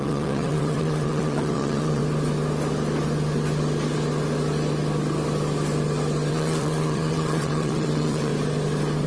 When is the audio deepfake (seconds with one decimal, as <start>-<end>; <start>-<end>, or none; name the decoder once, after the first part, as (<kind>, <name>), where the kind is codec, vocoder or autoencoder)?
0.0-2.0 (vocoder, WaveNeXt); 6.3-8.3